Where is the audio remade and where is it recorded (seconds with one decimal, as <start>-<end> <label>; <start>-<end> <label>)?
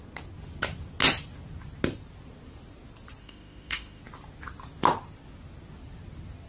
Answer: 0.0-3.2 recorded; 3.2-4.0 remade; 4.0-6.5 recorded